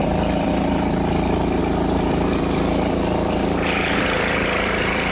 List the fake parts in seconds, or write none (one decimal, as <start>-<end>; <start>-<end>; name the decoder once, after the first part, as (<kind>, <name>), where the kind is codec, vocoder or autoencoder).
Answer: 0.0-5.1 (vocoder, BigVGAN v2)